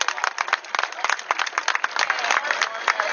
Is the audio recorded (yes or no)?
yes